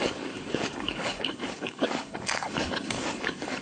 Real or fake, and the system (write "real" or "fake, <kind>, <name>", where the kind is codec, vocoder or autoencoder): fake, codec, DAC